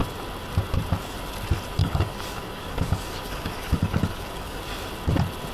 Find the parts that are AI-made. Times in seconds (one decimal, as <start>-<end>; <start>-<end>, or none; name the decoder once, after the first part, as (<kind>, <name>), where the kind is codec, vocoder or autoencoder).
1.8-4.6 (codec, DAC)